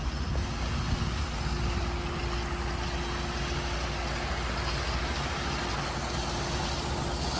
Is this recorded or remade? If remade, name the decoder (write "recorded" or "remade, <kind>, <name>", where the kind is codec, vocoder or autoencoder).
recorded